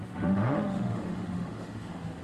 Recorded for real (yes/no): no